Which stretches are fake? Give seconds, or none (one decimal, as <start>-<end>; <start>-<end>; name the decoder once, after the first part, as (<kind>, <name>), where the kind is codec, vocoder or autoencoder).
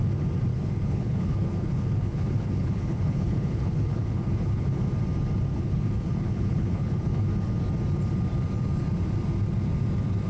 0.5-4.9 (codec, HILCodec); 5.5-7.3